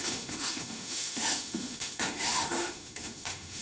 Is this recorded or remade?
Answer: remade